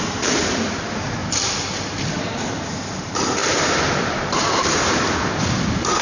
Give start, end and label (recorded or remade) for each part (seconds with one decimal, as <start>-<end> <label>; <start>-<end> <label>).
0.0-1.2 remade; 1.2-2.2 recorded; 2.2-6.0 remade